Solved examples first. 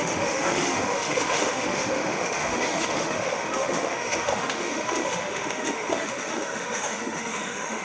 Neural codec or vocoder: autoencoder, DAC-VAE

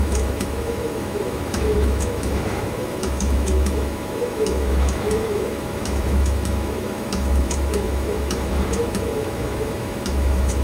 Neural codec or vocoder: autoencoder, DAC-VAE